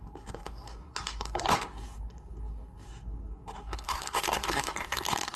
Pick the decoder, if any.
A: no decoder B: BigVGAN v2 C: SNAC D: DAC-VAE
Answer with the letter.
C